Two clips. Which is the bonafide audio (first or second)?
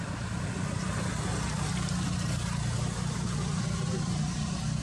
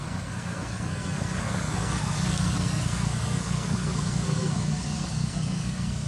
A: first